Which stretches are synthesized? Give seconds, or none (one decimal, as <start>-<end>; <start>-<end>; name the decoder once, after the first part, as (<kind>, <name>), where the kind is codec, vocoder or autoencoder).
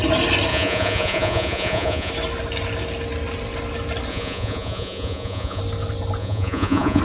0.5-2.1 (vocoder, Vocos); 4.1-5.6; 6.2-7.0